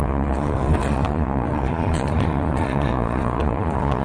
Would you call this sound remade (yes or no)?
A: yes